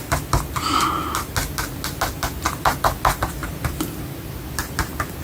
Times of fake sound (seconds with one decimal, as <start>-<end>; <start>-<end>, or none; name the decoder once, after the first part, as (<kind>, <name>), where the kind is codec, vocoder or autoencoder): none

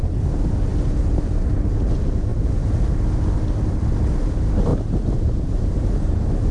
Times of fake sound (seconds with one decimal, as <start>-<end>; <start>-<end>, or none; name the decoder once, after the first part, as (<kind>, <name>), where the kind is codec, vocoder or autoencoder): 2.3-2.9 (vocoder, BigVGAN v2); 4.7-6.5

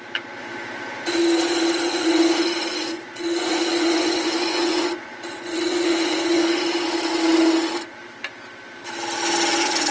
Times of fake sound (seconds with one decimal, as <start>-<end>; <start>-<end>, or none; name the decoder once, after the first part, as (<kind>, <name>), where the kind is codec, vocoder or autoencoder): 1.9-6.6 (vocoder, Vocos)

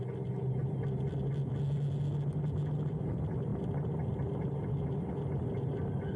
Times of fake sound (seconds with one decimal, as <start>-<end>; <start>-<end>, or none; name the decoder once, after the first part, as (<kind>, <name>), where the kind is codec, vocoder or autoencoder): none

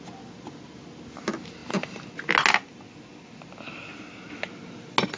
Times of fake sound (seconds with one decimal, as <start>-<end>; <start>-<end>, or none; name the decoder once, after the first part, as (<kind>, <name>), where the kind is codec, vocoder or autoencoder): none

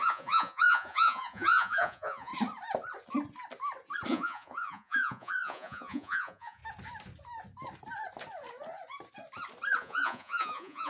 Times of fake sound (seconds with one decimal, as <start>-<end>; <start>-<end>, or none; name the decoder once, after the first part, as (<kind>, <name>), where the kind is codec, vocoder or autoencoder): 0.0-2.3 (vocoder, Vocos); 4.1-6.6; 9.8-10.9

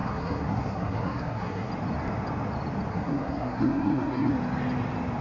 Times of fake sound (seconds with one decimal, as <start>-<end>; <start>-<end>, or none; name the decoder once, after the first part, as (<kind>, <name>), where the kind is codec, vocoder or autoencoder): 0.0-1.7 (codec, SNAC); 2.9-4.3